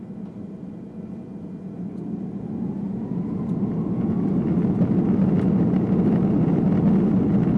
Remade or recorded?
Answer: recorded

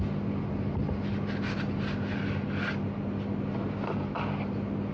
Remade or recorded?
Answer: recorded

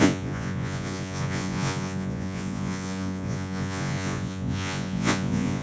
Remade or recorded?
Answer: remade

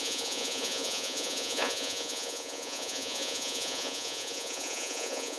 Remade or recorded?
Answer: remade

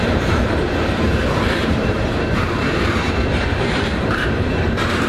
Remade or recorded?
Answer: remade